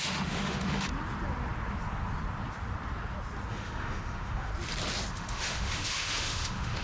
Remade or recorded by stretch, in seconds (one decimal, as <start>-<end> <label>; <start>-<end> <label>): 0.0-0.9 remade; 0.9-3.5 recorded; 3.5-4.5 remade; 4.5-5.1 recorded; 5.1-6.8 remade